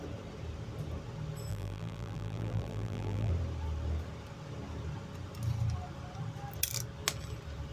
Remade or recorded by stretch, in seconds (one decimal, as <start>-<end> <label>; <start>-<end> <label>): 0.0-1.5 recorded; 1.5-3.3 remade; 3.3-7.7 recorded

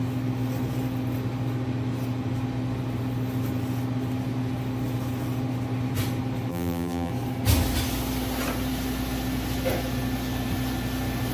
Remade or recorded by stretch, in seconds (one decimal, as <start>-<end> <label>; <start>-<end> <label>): 0.0-6.5 recorded; 6.5-7.1 remade; 7.1-11.3 recorded

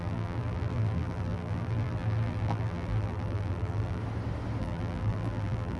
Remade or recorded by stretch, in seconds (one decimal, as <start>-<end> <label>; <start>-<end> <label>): 0.0-4.0 remade; 4.0-4.6 recorded; 4.6-5.8 remade